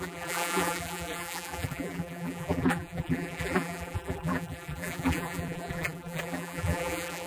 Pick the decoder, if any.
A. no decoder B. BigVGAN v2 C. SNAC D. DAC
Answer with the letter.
B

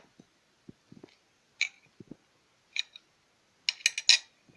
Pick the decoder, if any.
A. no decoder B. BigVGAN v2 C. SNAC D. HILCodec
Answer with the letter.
A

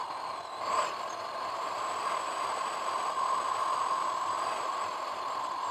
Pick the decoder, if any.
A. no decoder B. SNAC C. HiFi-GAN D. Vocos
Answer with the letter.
A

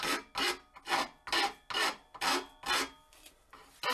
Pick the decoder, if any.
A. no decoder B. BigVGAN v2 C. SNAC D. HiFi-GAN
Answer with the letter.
A